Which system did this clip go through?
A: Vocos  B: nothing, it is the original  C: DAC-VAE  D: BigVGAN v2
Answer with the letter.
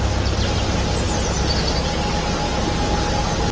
B